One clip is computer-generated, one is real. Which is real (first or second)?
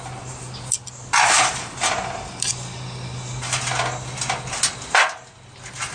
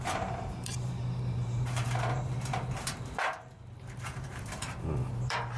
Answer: first